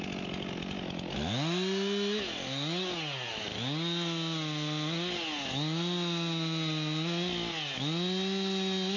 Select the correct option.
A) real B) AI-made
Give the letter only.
A